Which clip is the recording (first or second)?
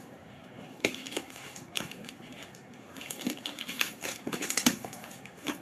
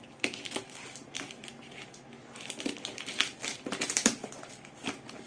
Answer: second